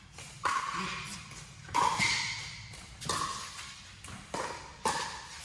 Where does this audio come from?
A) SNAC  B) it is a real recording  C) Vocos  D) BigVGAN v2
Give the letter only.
B